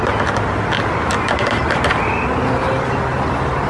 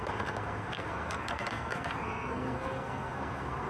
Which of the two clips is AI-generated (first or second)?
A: second